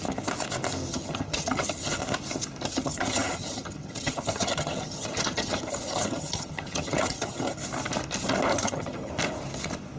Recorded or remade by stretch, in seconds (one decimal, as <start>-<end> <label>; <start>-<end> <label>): 0.0-0.9 recorded; 0.9-2.0 remade; 2.0-2.7 recorded; 2.7-7.6 remade; 7.6-8.5 recorded; 8.5-9.1 remade; 9.1-10.0 recorded